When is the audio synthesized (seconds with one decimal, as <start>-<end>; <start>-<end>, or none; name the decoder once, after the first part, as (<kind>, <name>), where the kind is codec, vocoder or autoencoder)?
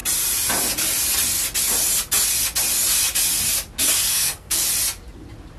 4.1-4.6 (codec, SNAC)